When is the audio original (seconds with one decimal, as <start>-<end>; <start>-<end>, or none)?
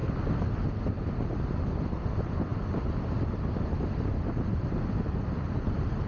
0.0-6.1